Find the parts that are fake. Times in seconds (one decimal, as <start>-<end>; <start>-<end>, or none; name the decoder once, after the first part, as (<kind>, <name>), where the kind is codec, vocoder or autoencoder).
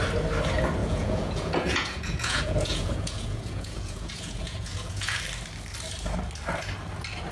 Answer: 0.8-5.2 (vocoder, Vocos)